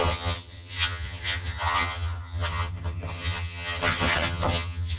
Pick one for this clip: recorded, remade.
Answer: remade